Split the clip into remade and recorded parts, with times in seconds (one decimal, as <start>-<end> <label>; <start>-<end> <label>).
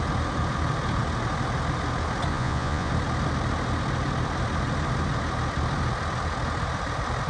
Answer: 0.0-2.3 recorded; 2.3-2.9 remade; 2.9-7.3 recorded